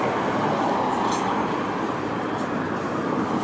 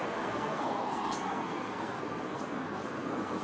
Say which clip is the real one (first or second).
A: first